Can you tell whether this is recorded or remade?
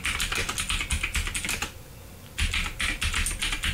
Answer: recorded